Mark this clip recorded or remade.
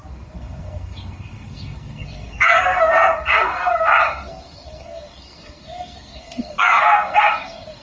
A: remade